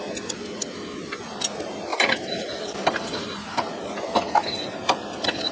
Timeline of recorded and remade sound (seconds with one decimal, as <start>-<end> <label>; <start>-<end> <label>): 0.0-1.9 recorded; 1.9-3.7 remade; 3.7-5.5 recorded